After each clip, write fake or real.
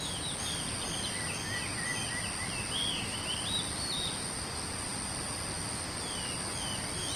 real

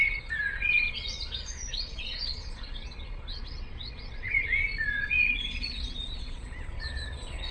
fake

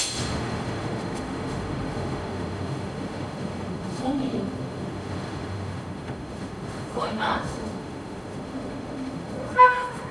fake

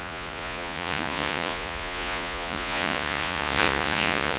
fake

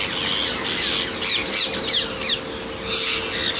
real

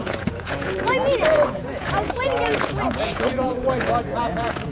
fake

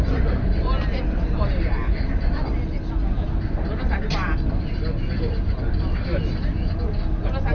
real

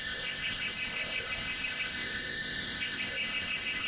fake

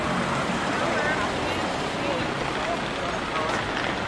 real